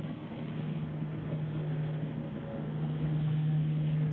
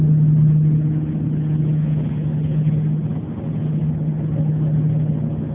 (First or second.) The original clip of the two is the second